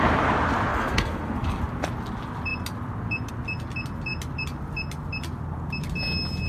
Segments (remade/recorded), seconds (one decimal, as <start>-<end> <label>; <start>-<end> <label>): 0.0-0.7 recorded; 0.7-1.6 remade; 1.6-6.5 recorded